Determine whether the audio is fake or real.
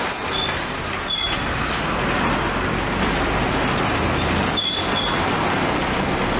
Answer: real